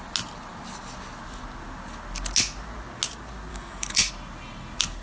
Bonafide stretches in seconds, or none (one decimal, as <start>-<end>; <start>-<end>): 0.0-3.5; 4.1-5.0